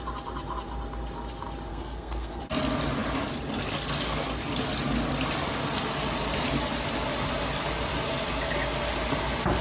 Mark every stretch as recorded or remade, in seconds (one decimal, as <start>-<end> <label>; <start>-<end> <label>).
0.0-1.7 recorded; 1.7-2.4 remade; 2.4-9.6 recorded

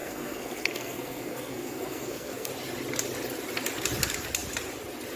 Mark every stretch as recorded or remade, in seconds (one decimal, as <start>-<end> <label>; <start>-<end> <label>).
0.0-2.5 remade; 2.5-5.2 recorded

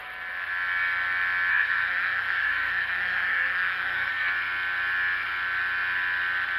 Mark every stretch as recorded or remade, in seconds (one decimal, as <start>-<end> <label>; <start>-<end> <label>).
0.0-1.5 recorded; 1.5-4.1 remade; 4.1-6.6 recorded

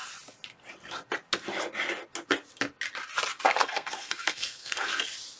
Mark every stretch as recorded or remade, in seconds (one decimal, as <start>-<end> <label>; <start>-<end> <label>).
0.0-3.5 recorded; 3.5-4.9 remade; 4.9-5.4 recorded

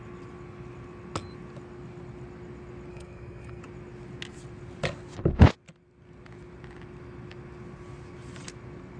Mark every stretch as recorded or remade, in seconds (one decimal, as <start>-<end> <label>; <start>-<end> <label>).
0.0-2.9 recorded; 2.9-3.6 remade; 3.6-9.0 recorded